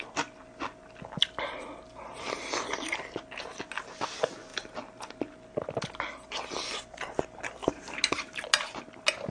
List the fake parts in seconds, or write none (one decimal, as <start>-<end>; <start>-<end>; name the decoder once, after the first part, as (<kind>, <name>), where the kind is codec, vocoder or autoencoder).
none